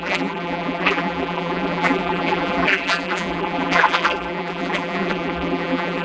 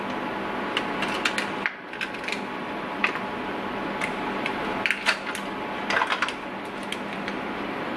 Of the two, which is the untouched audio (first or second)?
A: second